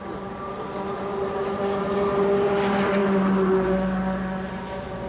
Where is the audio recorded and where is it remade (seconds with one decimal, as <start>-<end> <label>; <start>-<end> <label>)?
0.0-1.1 recorded; 1.1-1.8 remade; 1.8-5.1 recorded